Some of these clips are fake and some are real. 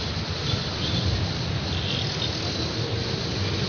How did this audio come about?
real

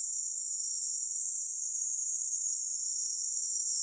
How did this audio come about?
fake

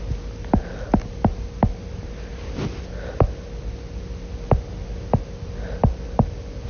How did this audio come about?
real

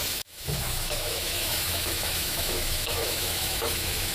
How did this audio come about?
fake